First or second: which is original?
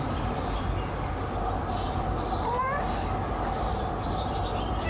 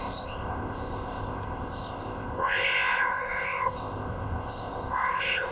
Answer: first